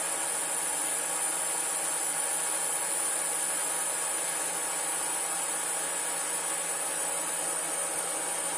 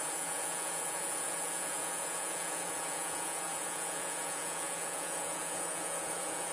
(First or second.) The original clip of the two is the first